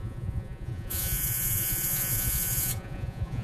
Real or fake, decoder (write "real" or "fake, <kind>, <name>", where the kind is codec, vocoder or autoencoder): fake, vocoder, Vocos